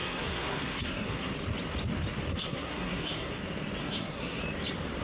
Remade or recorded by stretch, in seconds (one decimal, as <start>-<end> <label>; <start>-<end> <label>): 0.0-1.3 remade; 1.3-2.3 recorded; 2.3-3.4 remade; 3.4-3.8 recorded; 3.8-4.4 remade; 4.4-5.0 recorded